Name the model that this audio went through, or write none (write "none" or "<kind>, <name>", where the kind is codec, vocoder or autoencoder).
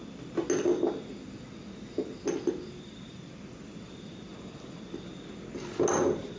none